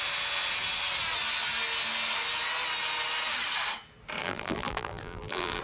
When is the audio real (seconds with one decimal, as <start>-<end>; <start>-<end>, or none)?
0.0-4.2